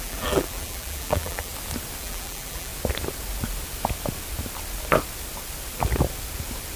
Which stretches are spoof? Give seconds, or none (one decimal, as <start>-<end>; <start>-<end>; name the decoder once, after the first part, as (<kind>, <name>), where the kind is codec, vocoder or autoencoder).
0.0-1.5 (vocoder, BigVGAN v2); 2.0-2.7

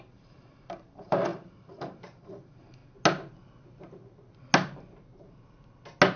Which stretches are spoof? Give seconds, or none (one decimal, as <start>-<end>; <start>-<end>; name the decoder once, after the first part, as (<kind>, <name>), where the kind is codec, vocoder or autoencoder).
0.0-2.8 (vocoder, BigVGAN v2)

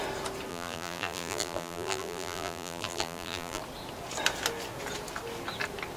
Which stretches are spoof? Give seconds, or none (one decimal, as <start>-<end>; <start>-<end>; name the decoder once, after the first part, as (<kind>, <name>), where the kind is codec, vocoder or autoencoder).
0.5-3.6 (vocoder, BigVGAN v2)